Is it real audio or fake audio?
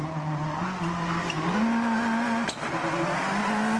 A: real